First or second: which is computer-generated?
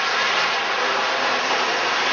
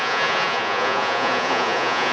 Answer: second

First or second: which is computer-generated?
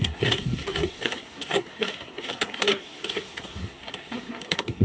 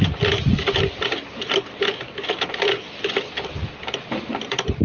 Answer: first